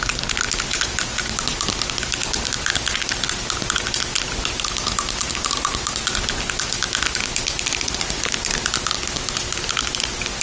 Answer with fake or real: real